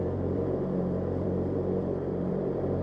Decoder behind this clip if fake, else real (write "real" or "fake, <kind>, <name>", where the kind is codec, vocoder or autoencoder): fake, vocoder, BigVGAN v2